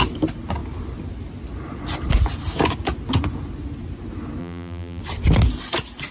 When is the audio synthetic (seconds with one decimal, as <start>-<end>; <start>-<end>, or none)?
4.4-5.0